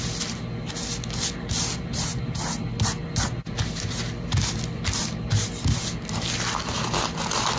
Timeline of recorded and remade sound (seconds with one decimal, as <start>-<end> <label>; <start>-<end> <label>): 0.0-7.6 recorded